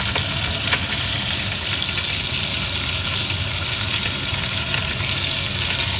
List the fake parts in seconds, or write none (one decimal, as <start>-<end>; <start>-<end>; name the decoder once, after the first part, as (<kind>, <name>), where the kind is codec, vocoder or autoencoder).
3.2-5.0 (vocoder, BigVGAN v2)